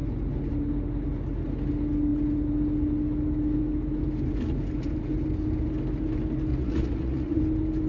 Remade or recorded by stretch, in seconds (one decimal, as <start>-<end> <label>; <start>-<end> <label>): 0.0-6.5 recorded; 6.5-7.4 remade; 7.4-7.9 recorded